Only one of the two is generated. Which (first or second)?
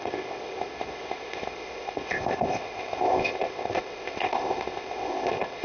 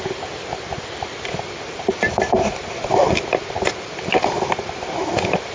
first